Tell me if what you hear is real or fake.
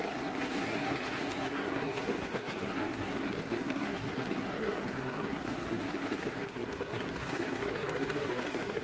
fake